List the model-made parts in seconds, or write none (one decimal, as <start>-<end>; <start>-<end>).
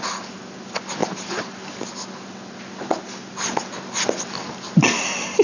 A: none